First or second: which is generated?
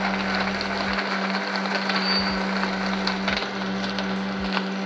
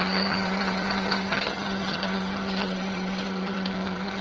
second